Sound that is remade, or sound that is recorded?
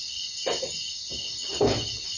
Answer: remade